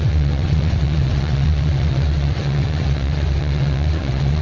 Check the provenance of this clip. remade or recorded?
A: remade